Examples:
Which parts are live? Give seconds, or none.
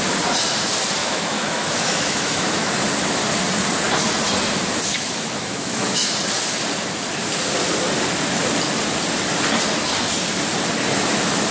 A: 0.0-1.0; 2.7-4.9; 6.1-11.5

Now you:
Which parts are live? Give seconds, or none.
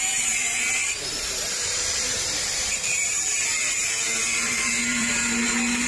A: none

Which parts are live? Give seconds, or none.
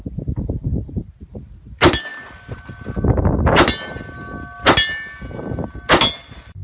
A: 0.0-6.6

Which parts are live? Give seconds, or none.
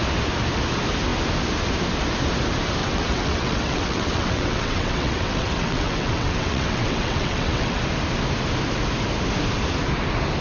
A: 0.0-2.8; 7.8-10.4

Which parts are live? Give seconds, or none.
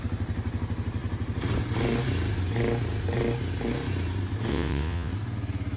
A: 0.0-4.5; 5.1-5.8